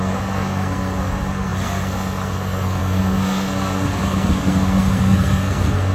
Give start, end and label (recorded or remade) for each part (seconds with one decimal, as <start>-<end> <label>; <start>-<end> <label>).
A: 0.0-5.9 remade